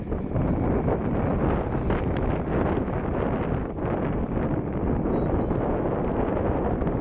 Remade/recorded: recorded